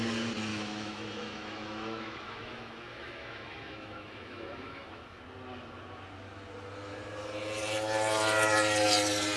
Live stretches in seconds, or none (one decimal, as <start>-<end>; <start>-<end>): 0.0-0.5; 5.2-9.4